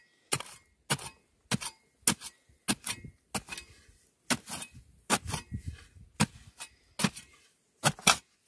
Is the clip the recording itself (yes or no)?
yes